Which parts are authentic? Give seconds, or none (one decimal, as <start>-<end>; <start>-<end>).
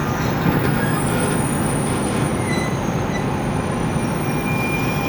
0.0-2.3; 3.2-5.1